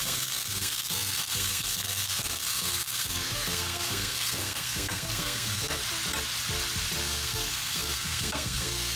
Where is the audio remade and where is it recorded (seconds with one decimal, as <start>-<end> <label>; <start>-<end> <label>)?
0.0-5.8 remade; 5.8-7.0 recorded; 7.0-9.0 remade

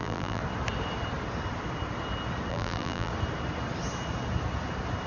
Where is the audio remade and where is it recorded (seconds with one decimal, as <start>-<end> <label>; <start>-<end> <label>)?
0.0-0.4 remade; 0.4-2.5 recorded; 2.5-3.1 remade; 3.1-5.1 recorded

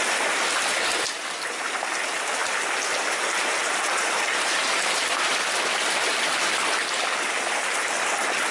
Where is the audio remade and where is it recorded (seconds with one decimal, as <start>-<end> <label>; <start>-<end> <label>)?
0.0-2.4 recorded; 2.4-7.5 remade; 7.5-8.5 recorded